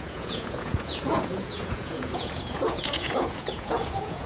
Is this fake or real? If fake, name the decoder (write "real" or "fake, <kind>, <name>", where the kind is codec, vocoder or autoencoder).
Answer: fake, vocoder, Vocos